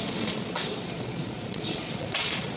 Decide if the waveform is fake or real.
fake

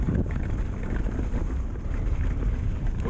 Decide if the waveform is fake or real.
real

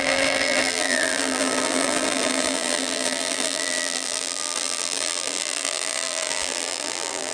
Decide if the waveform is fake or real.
fake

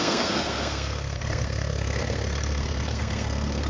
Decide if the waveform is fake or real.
fake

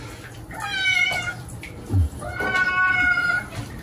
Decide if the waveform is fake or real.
real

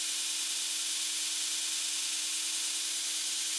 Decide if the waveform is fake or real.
real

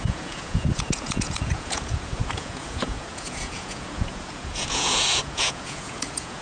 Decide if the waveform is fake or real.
fake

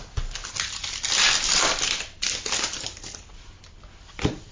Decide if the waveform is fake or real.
real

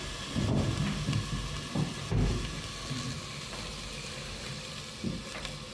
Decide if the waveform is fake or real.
real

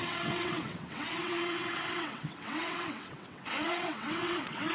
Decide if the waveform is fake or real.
fake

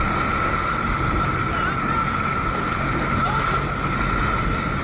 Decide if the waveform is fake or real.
real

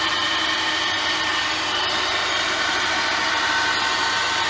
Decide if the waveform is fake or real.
fake